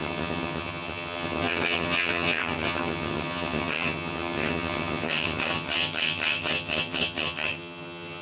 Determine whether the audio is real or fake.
fake